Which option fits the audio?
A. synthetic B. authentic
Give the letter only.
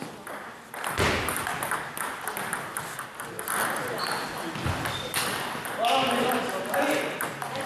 B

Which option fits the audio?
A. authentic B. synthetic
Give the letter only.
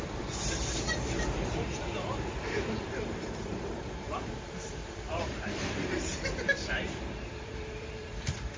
B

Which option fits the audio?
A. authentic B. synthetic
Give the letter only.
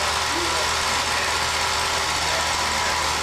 A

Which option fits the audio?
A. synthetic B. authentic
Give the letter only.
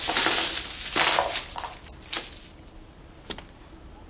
B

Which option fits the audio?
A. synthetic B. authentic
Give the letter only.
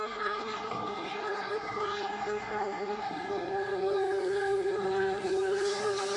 A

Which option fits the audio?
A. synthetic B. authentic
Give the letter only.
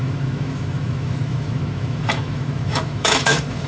A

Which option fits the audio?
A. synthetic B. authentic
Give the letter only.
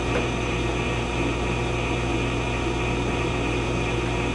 B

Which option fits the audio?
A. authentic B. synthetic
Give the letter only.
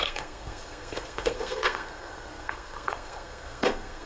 B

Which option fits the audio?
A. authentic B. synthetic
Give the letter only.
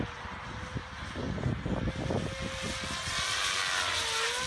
A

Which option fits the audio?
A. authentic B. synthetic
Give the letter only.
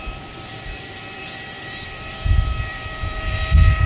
B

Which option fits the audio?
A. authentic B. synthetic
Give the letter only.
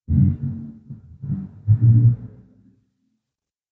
A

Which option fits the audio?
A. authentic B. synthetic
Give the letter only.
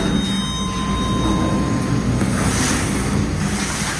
A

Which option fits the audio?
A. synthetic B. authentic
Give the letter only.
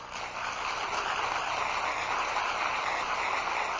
B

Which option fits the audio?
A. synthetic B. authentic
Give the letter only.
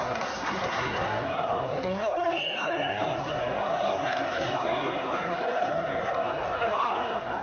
A